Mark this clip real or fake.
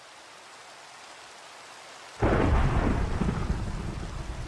real